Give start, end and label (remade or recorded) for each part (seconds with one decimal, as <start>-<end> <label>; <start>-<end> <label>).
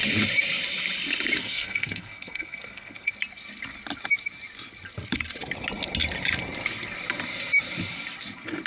0.0-1.4 recorded; 1.4-3.1 remade; 3.1-8.7 recorded